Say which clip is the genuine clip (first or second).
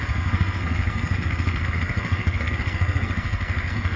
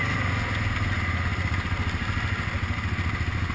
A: second